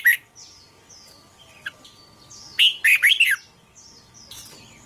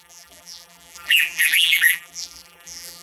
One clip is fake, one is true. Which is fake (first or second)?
second